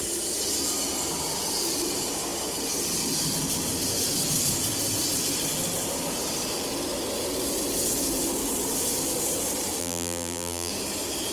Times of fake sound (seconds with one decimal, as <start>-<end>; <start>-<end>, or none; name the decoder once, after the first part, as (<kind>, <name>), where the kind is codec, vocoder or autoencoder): 9.8-10.7 (vocoder, BigVGAN v2)